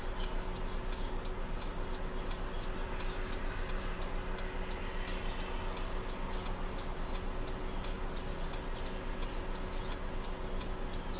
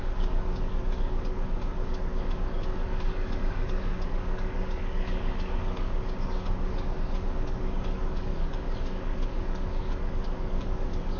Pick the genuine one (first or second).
first